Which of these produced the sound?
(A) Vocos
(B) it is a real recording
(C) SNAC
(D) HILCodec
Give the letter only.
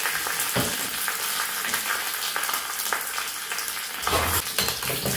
B